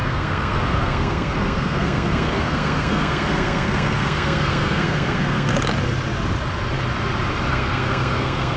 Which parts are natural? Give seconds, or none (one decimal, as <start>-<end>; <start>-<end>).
5.5-7.5